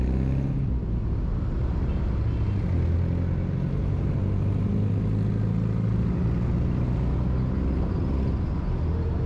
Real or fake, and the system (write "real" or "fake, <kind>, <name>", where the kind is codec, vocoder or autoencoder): real